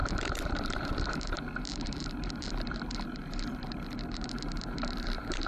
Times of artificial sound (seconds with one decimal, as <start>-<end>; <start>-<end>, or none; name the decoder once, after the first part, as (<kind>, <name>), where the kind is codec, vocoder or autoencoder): 0.0-5.5 (vocoder, BigVGAN v2)